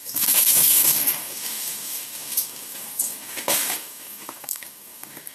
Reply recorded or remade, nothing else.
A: remade